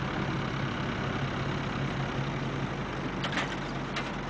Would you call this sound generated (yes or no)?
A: no